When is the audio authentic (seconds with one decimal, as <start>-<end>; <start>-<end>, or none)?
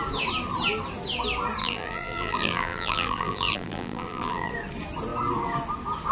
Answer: 0.0-1.6; 4.5-6.1